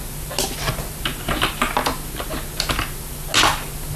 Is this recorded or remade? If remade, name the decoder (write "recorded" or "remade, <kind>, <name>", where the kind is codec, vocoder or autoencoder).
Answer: recorded